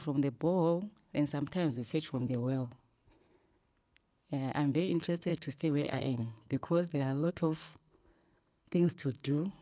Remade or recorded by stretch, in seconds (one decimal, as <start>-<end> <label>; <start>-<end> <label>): 0.0-1.7 recorded; 1.7-3.0 remade; 3.0-4.8 recorded; 4.8-9.6 remade